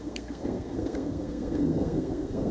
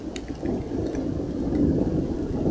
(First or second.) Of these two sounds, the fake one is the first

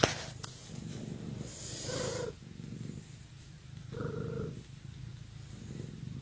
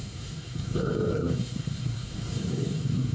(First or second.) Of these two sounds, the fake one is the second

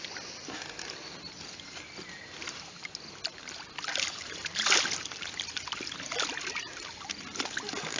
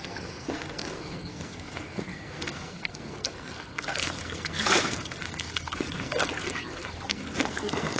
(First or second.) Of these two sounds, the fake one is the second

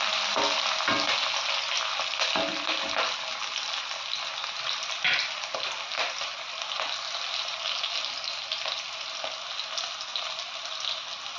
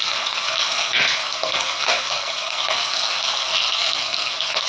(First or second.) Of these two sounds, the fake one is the second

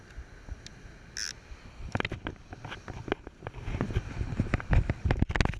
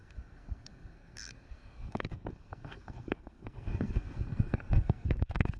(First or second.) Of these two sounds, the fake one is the second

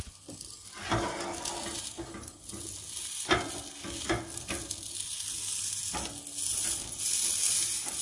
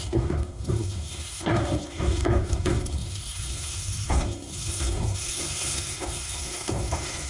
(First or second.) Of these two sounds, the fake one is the second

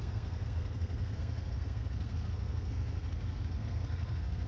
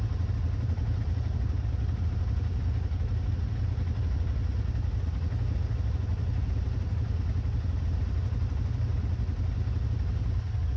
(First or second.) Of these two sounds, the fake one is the first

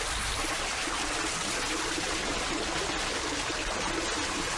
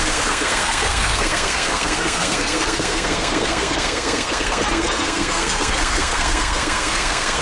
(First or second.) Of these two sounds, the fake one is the second